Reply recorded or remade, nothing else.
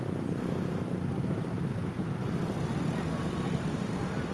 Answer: recorded